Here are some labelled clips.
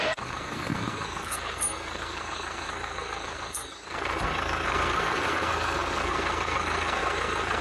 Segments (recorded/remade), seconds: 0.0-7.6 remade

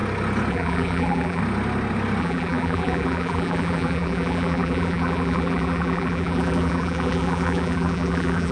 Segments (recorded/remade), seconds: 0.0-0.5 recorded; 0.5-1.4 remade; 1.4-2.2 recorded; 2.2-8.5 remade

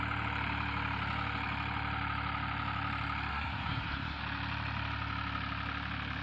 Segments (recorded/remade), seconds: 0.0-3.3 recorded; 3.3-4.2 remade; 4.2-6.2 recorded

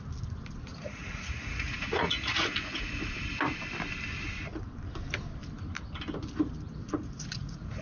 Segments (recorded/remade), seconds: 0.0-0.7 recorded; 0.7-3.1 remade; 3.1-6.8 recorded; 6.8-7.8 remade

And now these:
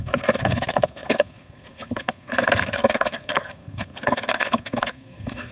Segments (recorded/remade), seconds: 0.0-5.5 remade

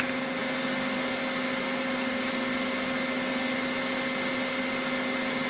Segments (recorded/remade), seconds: 0.0-5.5 recorded

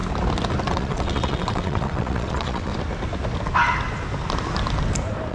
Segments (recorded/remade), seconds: 0.0-0.7 recorded; 0.7-2.7 remade; 2.7-5.3 recorded